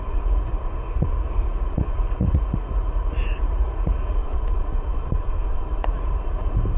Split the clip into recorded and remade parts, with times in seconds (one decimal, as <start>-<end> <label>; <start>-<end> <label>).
0.0-4.2 remade; 4.2-5.8 recorded; 5.8-6.8 remade